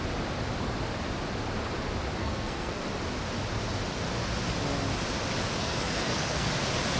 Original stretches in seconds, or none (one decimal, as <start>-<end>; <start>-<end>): 0.0-2.2; 2.8-5.6; 6.5-7.0